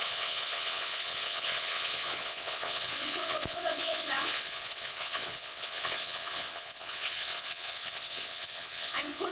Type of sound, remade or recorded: remade